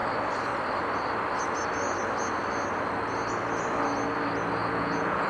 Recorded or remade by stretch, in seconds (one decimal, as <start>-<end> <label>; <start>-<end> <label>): 0.0-4.6 recorded; 4.6-5.3 remade